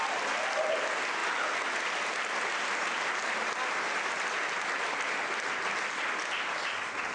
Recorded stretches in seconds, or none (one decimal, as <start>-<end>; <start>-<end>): 0.0-7.1

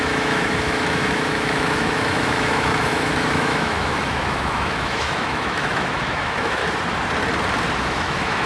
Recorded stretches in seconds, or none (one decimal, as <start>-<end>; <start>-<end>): 6.6-7.8